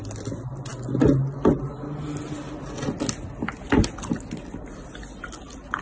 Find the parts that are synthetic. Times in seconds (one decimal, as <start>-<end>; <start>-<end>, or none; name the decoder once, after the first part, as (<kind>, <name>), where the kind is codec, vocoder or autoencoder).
none